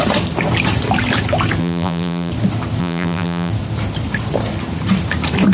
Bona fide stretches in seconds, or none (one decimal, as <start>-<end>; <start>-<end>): 0.0-1.6; 2.3-2.8; 3.5-5.5